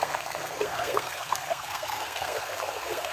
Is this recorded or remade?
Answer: remade